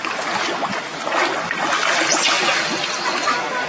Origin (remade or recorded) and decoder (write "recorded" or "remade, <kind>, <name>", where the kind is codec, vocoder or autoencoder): recorded